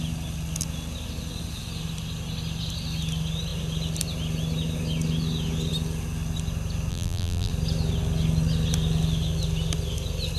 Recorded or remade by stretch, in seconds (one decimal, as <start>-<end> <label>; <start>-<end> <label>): 0.0-6.9 recorded; 6.9-7.5 remade; 7.5-10.4 recorded